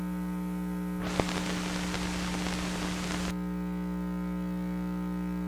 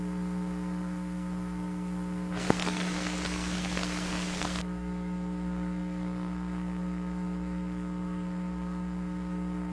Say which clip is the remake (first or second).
second